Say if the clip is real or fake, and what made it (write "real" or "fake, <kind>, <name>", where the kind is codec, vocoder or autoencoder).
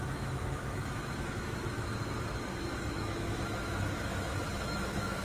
fake, autoencoder, DAC-VAE